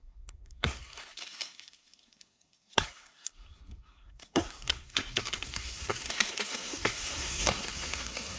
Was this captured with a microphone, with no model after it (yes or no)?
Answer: no